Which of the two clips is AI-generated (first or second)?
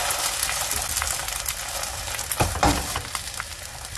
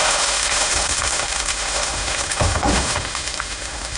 second